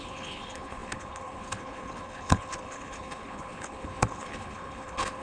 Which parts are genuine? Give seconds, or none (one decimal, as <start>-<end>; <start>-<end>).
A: none